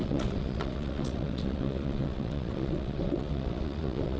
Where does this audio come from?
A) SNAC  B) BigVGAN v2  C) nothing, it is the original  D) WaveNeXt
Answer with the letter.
D